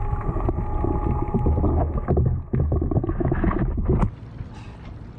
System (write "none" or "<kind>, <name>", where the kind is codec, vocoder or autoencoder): none